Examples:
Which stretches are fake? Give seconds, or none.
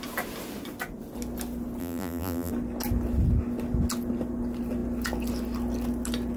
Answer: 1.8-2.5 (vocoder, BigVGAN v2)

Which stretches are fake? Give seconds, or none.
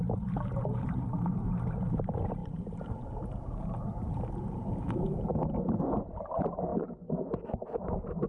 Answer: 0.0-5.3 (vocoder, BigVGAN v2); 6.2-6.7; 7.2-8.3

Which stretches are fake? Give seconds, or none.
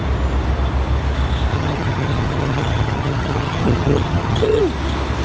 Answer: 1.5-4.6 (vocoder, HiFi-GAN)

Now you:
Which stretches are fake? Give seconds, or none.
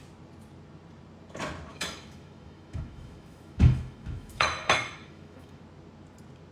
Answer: 1.7-5.6 (autoencoder, DAC-VAE)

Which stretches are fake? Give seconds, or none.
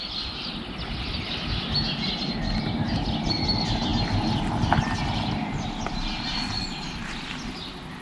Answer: none